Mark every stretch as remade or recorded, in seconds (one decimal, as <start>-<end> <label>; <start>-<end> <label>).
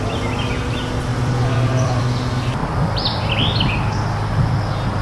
0.0-1.1 recorded; 1.1-2.0 remade; 2.0-2.6 recorded; 2.6-3.3 remade; 3.3-5.0 recorded